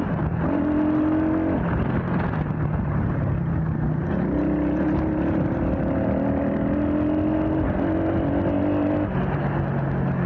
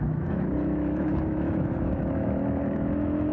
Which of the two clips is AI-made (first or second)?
second